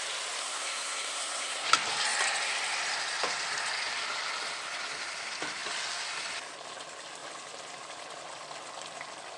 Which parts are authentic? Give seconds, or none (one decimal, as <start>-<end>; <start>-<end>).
0.0-0.4; 1.7-9.4